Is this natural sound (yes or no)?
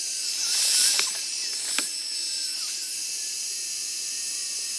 yes